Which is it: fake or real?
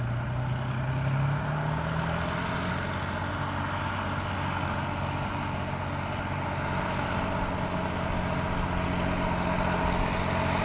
real